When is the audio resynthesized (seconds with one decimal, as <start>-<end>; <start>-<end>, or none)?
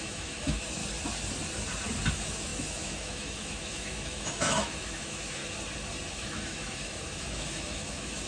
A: 0.0-0.8; 2.1-5.4; 6.1-8.3